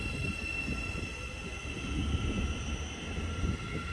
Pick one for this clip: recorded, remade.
recorded